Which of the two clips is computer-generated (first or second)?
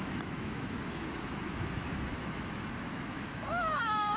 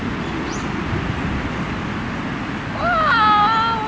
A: first